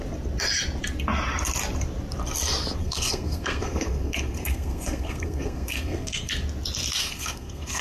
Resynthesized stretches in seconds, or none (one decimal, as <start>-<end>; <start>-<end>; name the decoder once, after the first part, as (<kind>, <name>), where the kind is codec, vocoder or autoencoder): 2.8-6.3 (codec, SNAC); 7.0-7.8